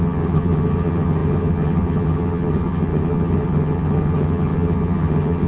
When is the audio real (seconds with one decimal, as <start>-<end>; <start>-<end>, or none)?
none